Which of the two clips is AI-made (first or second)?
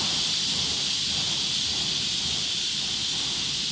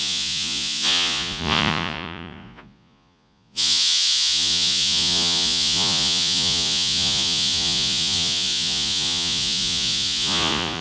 second